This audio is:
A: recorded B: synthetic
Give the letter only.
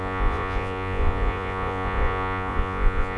B